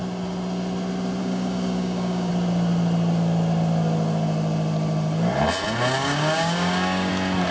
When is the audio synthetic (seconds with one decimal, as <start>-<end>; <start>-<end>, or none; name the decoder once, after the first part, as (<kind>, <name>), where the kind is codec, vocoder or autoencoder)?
1.2-2.3 (codec, DAC); 6.0-7.1